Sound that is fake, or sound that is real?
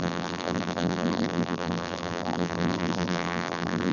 fake